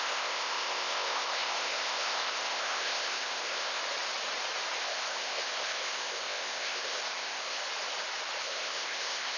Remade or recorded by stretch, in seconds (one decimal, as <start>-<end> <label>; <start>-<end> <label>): 0.0-3.8 remade; 3.8-4.8 recorded; 4.8-7.6 remade; 7.6-8.4 recorded; 8.4-9.4 remade